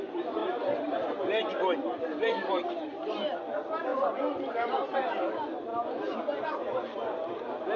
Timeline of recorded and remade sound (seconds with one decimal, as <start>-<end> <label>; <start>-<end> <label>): 0.0-0.4 recorded; 0.4-1.5 remade; 1.5-2.1 recorded; 2.1-3.1 remade; 3.1-3.9 recorded; 3.9-4.5 remade; 4.5-5.7 recorded; 5.7-6.2 remade; 6.2-7.8 recorded